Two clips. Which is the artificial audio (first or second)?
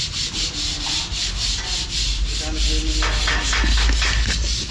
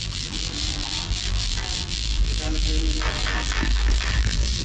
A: second